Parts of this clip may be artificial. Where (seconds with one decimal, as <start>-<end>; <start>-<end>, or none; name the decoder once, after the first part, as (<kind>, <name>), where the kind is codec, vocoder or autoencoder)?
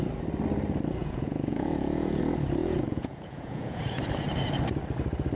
1.0-2.2 (vocoder, Vocos); 2.6-3.8